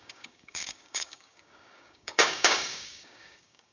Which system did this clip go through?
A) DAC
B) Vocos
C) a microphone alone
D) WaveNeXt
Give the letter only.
A